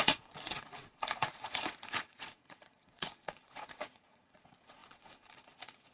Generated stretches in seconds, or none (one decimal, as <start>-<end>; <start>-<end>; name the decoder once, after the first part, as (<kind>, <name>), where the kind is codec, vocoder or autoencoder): 0.0-5.9 (vocoder, Vocos)